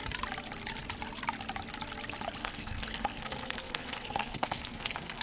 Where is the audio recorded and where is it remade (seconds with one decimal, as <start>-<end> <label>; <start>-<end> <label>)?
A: 0.0-2.4 recorded; 2.4-5.2 remade